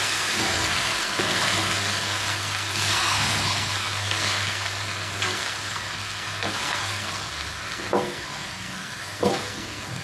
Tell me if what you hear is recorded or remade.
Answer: remade